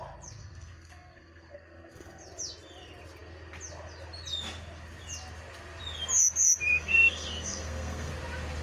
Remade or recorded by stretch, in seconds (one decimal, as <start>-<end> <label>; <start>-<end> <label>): 0.0-0.4 recorded; 0.4-2.2 remade; 2.2-6.7 recorded; 6.7-8.1 remade; 8.1-8.6 recorded